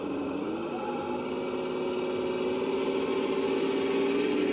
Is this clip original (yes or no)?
yes